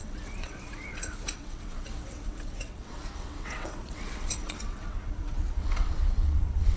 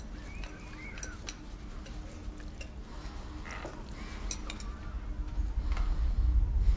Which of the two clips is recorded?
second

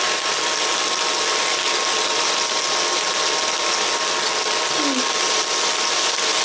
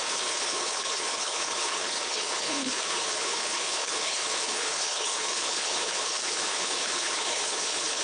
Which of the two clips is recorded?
first